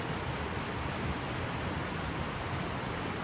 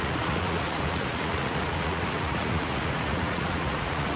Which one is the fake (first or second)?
second